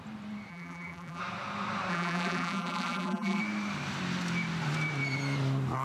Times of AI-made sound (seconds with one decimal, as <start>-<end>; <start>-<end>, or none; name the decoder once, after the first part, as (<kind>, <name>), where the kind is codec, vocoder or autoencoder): 0.5-1.2 (vocoder, BigVGAN v2); 1.9-3.4